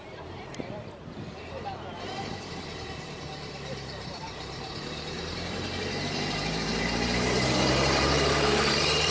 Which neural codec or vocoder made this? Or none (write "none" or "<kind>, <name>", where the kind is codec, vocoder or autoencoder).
vocoder, BigVGAN v2